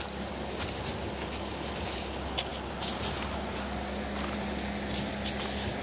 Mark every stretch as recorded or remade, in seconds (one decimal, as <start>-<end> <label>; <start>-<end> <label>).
0.0-5.8 recorded